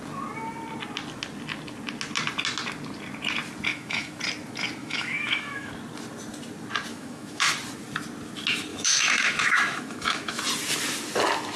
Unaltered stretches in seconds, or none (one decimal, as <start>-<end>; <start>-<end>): 0.0-3.7; 4.2-4.8; 5.7-6.9; 7.5-8.7; 10.4-11.6